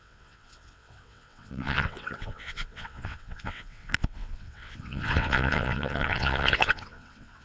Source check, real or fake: fake